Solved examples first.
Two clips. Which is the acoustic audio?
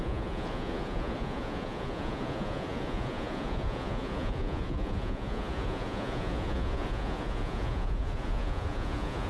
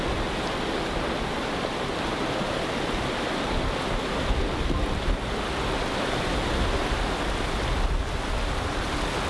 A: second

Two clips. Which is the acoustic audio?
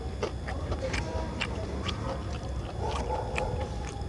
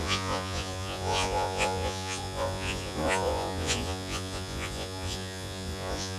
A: first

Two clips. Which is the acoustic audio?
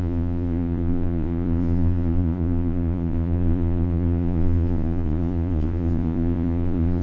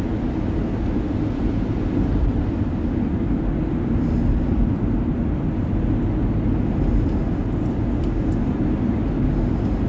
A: second